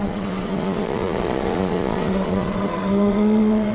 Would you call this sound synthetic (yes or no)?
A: yes